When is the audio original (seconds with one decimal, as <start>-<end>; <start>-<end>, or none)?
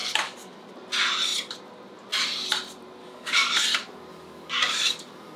0.7-3.0; 3.6-4.1